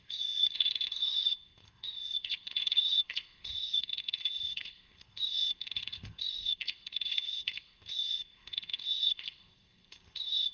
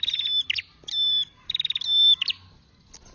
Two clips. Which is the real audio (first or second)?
second